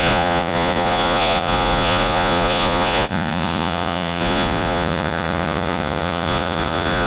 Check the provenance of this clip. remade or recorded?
remade